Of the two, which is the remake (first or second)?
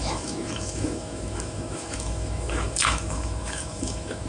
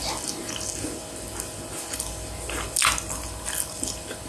first